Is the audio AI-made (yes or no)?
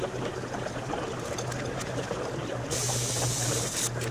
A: no